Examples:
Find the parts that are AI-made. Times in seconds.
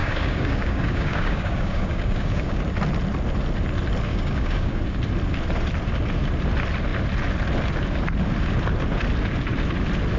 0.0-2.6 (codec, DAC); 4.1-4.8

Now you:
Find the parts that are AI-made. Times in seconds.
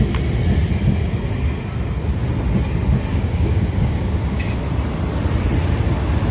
3.1-4.6 (codec, DAC)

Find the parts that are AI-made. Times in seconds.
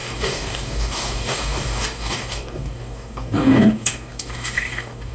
0.0-5.1 (codec, DAC)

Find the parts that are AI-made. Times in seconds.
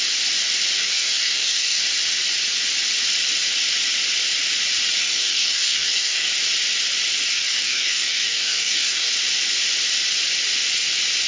0.8-1.8 (codec, DAC); 5.0-6.3; 7.3-9.1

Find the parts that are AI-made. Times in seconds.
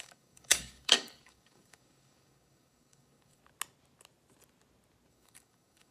0.0-3.4 (codec, DAC); 5.1-5.9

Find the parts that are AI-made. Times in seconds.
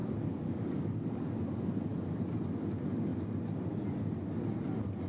0.0-1.4 (codec, DAC)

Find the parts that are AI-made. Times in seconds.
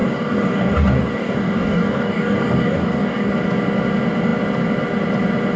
0.0-3.3 (codec, DAC)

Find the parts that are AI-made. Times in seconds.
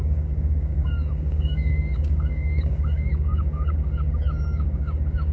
0.0-5.3 (codec, DAC)